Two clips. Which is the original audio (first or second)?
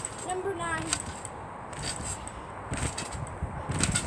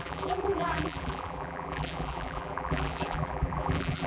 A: first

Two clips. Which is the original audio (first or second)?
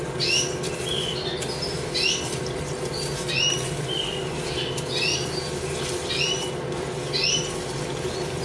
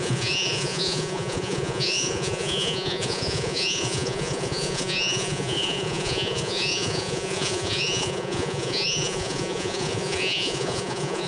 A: first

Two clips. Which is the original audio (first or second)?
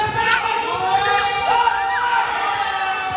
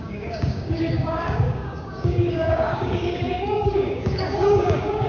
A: first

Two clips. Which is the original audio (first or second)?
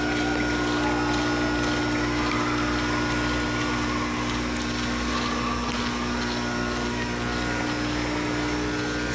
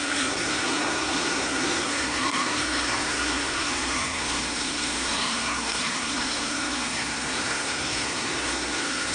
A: first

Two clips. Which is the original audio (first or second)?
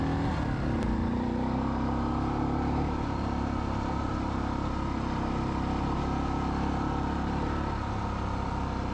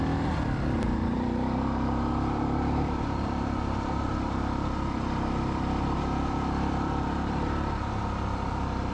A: first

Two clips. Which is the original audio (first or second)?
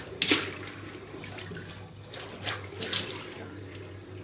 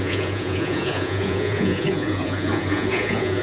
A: first